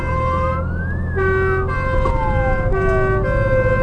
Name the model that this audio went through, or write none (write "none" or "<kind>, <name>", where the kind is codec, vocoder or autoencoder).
none